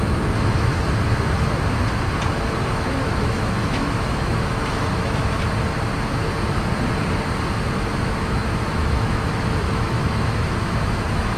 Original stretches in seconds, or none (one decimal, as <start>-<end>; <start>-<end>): 0.7-2.7; 5.2-7.9

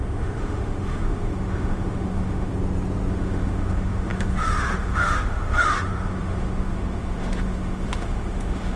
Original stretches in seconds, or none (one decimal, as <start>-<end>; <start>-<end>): 2.5-3.1

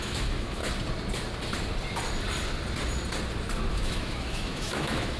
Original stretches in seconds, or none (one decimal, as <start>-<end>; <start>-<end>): 0.6-3.7